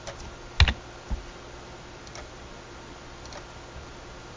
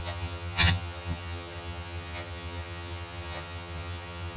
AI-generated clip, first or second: second